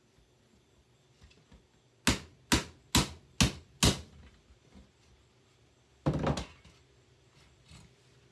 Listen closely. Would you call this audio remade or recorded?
recorded